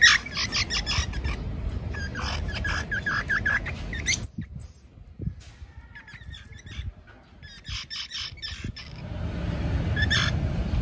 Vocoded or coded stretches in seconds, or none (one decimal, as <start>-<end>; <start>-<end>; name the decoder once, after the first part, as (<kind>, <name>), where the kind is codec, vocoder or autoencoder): none

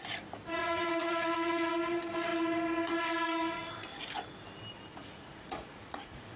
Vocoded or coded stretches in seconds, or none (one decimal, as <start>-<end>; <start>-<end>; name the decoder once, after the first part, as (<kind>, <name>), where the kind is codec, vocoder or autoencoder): 0.6-1.7 (vocoder, Vocos); 4.9-6.4

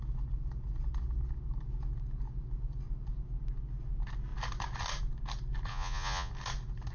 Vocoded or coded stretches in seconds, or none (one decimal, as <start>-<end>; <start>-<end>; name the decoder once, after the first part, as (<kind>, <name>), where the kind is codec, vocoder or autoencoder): 5.7-6.3 (vocoder, Vocos)